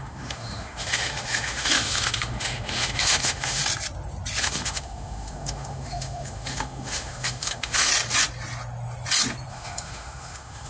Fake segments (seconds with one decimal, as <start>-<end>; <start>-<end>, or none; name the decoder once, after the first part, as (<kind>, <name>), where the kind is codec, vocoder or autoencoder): 0.0-3.6 (autoencoder, DAC-VAE); 4.4-7.9; 9.5-10.7